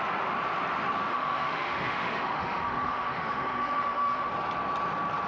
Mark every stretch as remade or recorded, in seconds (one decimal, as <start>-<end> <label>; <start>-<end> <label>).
0.0-1.1 recorded; 1.1-4.3 remade; 4.3-5.3 recorded